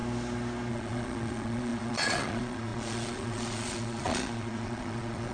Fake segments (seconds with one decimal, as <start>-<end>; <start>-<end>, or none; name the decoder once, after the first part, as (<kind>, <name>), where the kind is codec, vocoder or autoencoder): 0.7-5.3 (vocoder, Vocos)